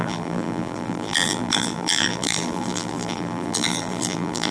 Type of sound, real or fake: fake